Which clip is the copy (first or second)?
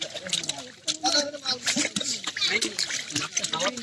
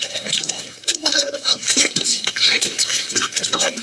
second